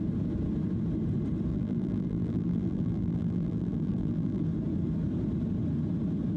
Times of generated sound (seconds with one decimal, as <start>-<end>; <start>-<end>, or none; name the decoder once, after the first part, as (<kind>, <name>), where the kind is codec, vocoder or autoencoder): 1.5-4.4 (vocoder, BigVGAN v2)